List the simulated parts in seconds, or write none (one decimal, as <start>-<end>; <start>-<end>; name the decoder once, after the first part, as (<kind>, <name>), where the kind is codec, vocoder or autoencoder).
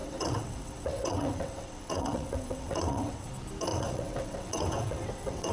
0.0-3.3 (vocoder, WaveNeXt); 3.7-5.5